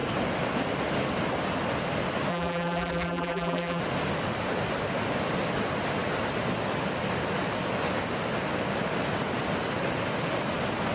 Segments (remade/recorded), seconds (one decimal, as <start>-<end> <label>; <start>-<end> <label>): 0.0-2.3 recorded; 2.3-3.8 remade; 3.8-10.9 recorded